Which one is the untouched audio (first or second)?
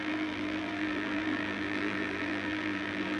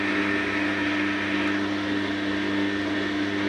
second